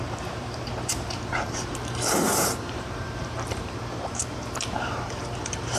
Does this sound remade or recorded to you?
remade